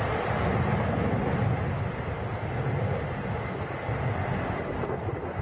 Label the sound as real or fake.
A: real